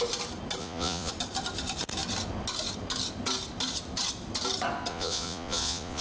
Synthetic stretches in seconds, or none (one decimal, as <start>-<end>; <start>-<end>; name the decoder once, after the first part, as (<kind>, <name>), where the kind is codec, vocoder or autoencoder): 0.6-1.1 (vocoder, Vocos); 4.9-6.0